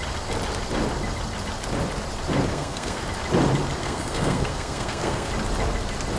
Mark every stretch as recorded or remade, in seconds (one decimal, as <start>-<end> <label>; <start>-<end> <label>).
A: 0.0-2.5 recorded; 2.5-3.0 remade; 3.0-3.8 recorded; 3.8-5.3 remade; 5.3-6.2 recorded

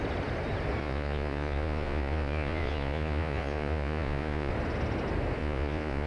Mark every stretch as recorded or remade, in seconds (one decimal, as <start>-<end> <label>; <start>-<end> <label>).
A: 0.0-0.8 recorded; 0.8-4.5 remade; 4.5-5.4 recorded; 5.4-6.1 remade

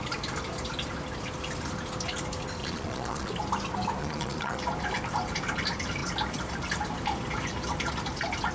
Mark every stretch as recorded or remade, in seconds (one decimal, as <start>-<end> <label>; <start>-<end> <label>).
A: 0.0-2.6 recorded; 2.6-3.3 remade; 3.3-4.0 recorded; 4.0-4.6 remade; 4.6-8.5 recorded

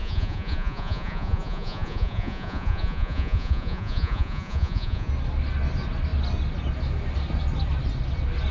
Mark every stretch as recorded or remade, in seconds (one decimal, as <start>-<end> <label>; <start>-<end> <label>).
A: 0.0-5.1 remade; 5.1-8.5 recorded